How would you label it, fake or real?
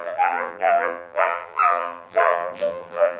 fake